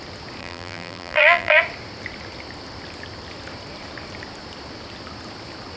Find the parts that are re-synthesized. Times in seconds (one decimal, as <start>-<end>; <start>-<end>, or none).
0.4-1.6